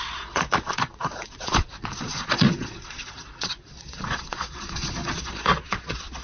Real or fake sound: fake